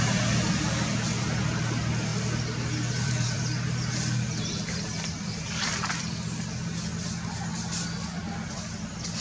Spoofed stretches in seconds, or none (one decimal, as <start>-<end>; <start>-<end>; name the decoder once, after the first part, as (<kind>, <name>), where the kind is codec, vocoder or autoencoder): 2.1-6.1 (vocoder, BigVGAN v2); 7.5-8.3